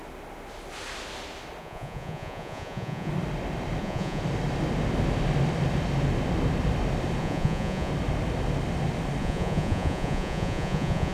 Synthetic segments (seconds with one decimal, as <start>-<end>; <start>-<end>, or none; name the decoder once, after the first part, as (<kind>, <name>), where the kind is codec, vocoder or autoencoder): 1.6-3.1 (vocoder, Vocos); 3.8-4.2; 7.2-7.9; 9.2-11.1